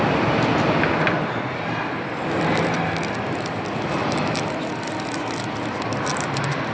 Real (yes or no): yes